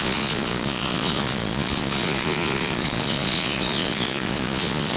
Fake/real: fake